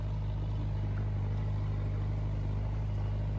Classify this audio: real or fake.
real